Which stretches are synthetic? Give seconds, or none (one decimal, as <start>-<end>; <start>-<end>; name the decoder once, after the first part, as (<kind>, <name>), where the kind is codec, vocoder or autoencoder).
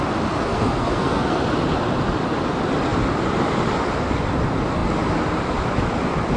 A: 0.5-1.4 (codec, SNAC)